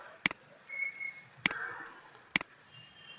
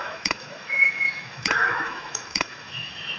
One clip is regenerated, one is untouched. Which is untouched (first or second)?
first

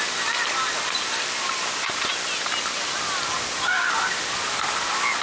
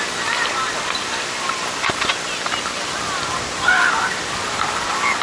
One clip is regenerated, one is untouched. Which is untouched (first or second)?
first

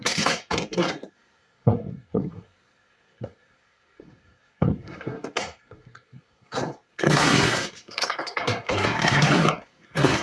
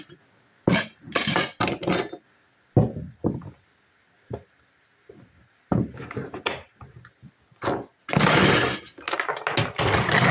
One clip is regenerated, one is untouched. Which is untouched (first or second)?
second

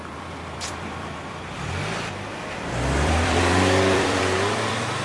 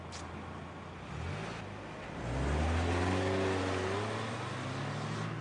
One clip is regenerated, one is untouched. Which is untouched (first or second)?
second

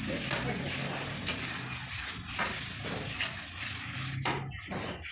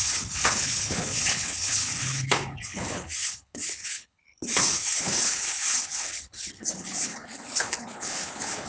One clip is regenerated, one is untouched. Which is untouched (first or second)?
first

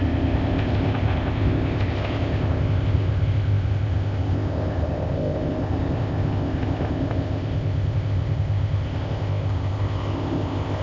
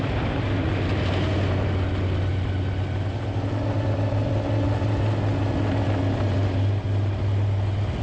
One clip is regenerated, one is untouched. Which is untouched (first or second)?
second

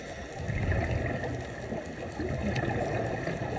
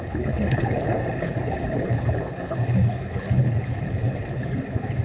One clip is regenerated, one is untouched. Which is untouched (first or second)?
first